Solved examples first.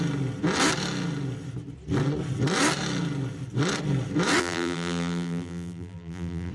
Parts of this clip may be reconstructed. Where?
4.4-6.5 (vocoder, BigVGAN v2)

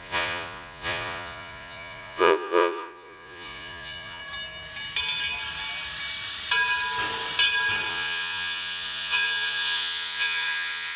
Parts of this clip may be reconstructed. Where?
0.0-4.2 (vocoder, Vocos); 7.9-11.0

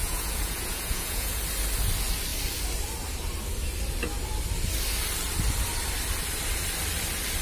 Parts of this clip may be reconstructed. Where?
0.0-1.4 (vocoder, Vocos)

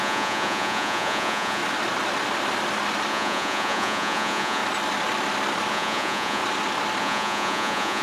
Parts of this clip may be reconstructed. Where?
0.0-1.6 (vocoder, Vocos); 3.1-4.6; 5.7-6.4; 7.0-8.0